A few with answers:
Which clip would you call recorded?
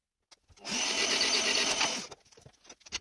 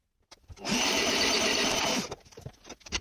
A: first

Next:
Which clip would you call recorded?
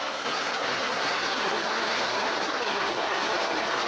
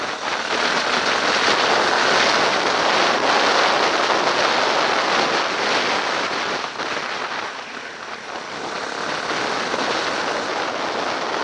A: second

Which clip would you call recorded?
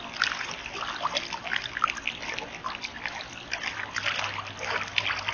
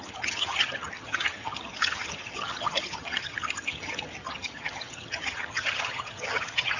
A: first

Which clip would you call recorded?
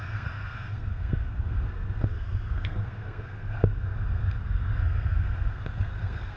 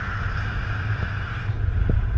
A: second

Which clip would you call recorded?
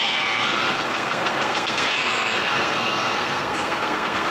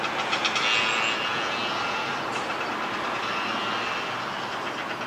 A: second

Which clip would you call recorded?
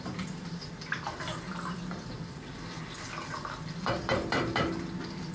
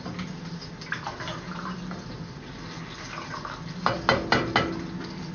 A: second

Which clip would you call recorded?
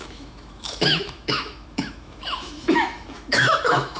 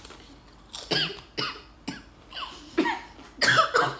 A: second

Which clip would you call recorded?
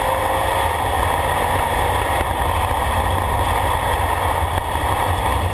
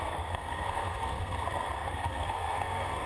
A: first